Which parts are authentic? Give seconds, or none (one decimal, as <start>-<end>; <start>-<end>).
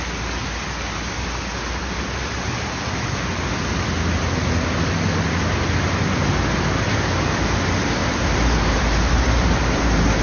0.0-8.0